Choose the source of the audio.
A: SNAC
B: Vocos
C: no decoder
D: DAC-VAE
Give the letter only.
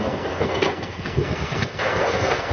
A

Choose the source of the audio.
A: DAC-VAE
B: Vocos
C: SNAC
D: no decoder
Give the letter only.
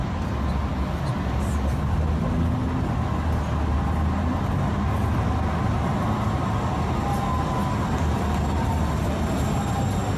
D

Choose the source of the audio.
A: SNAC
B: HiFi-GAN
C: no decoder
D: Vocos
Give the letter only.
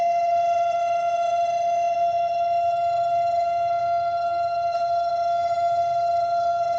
B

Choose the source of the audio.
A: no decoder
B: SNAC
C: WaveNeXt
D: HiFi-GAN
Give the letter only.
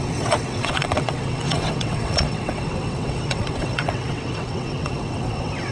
C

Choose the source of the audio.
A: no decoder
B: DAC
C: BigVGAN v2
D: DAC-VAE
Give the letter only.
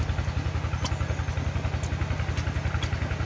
A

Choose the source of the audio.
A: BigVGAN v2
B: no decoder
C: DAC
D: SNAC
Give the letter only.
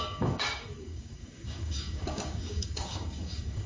C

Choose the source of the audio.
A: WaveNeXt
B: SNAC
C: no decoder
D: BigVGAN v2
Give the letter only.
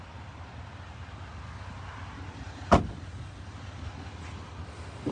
C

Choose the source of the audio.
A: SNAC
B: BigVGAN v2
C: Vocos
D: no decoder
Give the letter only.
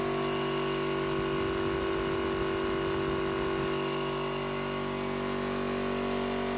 D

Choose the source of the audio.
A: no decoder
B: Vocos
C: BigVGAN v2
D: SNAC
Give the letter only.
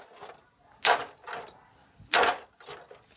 A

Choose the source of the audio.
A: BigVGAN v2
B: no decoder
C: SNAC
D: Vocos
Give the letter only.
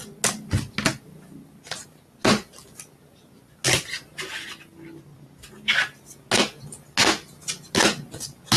B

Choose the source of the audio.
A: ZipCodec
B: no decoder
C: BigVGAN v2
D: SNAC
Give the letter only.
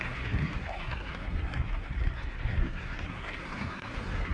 D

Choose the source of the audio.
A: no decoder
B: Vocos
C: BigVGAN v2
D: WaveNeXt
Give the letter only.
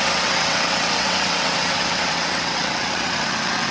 D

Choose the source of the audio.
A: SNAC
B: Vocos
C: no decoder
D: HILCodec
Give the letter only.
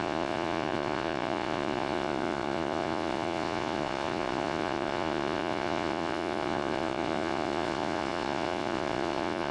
B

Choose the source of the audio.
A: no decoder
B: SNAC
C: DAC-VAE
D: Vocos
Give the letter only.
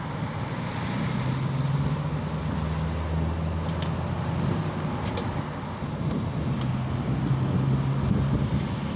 A